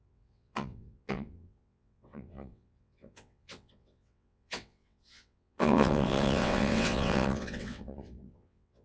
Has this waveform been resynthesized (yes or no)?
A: yes